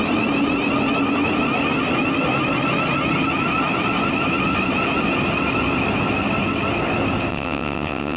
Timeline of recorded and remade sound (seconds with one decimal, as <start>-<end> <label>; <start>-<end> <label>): 0.0-7.3 recorded; 7.3-8.2 remade